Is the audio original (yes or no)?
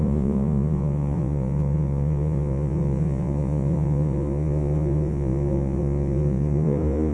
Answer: no